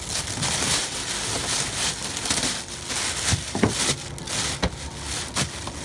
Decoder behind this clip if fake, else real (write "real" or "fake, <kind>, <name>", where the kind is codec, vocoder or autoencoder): real